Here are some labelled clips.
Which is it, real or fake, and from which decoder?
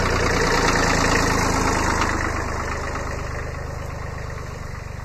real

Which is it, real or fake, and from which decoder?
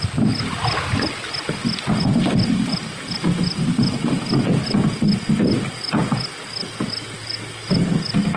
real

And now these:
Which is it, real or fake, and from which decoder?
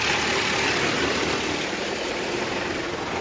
real